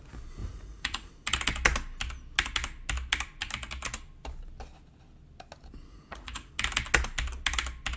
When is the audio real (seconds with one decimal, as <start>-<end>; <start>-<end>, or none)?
0.0-0.4; 1.1-5.9; 6.5-8.0